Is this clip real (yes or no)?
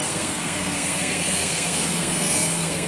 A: no